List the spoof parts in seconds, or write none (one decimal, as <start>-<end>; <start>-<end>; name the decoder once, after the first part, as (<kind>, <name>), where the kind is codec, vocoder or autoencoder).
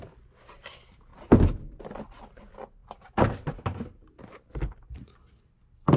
none